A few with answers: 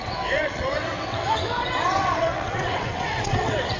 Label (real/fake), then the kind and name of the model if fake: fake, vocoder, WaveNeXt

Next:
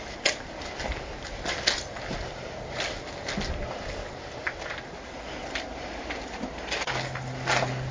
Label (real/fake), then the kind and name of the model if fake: real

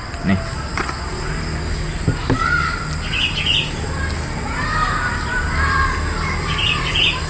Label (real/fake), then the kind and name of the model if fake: real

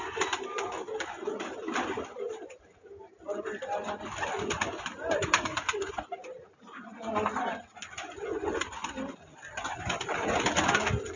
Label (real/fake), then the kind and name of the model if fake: real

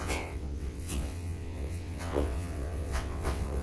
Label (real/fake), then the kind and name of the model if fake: fake, vocoder, WaveNeXt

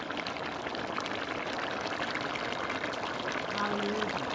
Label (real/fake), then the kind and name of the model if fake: real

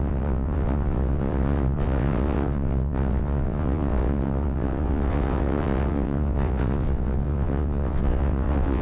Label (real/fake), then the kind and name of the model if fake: fake, vocoder, WaveNeXt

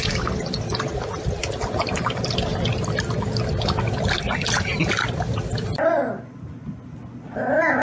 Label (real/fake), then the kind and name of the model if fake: real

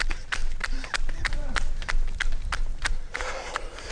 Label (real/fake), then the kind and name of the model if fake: real